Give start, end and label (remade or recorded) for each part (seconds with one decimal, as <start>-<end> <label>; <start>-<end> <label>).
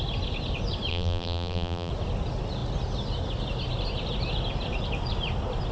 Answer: 0.0-0.9 recorded; 0.9-1.9 remade; 1.9-5.7 recorded